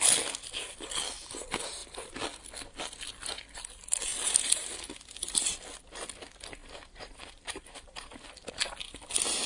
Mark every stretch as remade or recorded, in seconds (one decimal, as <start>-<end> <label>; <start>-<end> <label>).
0.0-4.1 recorded; 4.1-4.7 remade; 4.7-6.6 recorded; 6.6-8.3 remade; 8.3-9.5 recorded